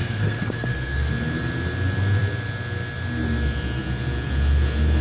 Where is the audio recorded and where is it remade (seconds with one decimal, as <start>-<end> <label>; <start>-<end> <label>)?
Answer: 0.0-1.1 remade; 1.1-5.0 recorded